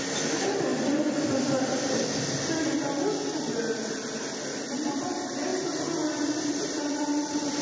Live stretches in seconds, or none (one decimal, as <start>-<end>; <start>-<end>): 0.0-0.7; 2.3-5.5